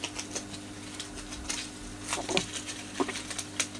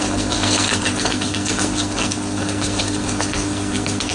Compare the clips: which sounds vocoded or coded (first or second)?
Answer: second